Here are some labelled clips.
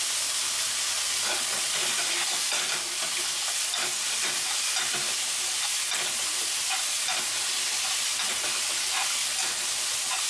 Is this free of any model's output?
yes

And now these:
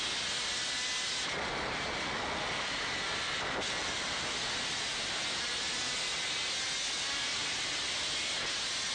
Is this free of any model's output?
yes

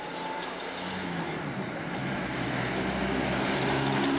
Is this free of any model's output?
yes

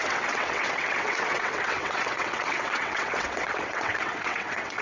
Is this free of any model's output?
no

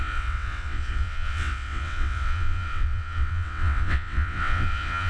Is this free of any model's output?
no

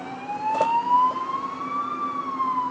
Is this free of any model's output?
yes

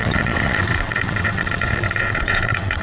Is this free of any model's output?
no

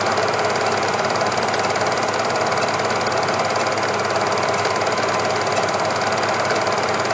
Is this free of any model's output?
yes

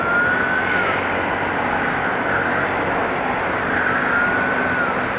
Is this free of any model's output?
yes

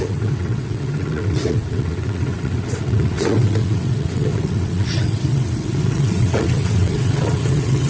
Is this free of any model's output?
no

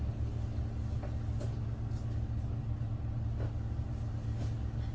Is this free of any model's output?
yes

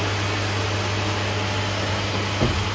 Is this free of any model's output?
yes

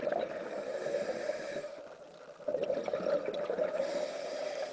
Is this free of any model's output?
yes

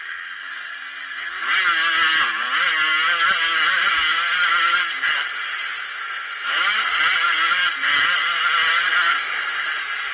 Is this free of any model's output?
yes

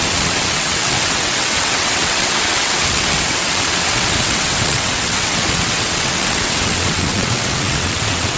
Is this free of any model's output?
no